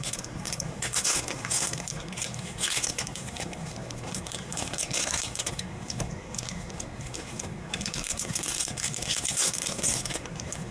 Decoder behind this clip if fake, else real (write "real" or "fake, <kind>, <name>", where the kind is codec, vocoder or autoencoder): fake, codec, SNAC